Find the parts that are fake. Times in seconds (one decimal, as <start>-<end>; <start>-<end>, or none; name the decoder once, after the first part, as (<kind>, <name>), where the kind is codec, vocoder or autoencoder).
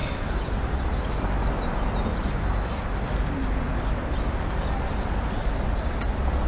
none